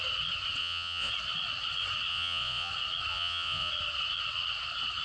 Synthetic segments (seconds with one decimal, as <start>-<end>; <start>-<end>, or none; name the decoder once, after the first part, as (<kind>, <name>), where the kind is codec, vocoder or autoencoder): 0.6-1.1 (vocoder, Vocos); 2.1-2.7; 3.1-3.7